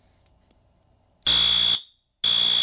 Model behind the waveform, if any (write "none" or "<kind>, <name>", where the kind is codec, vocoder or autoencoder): none